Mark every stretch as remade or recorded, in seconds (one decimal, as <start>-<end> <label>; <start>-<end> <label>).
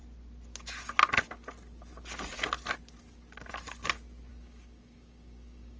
0.0-4.3 recorded; 4.3-5.8 remade